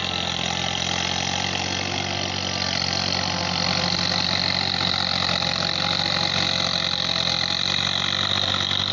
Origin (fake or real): real